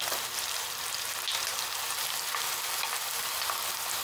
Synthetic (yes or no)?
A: no